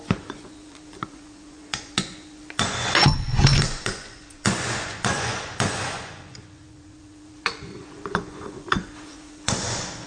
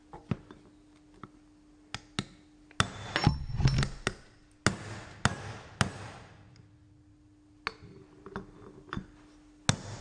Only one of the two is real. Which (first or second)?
second